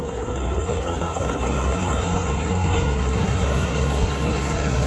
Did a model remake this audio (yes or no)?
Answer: yes